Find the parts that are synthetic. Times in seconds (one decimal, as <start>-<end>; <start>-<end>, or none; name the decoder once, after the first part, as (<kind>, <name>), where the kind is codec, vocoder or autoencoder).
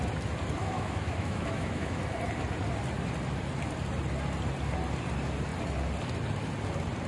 0.6-2.0 (autoencoder, DAC-VAE)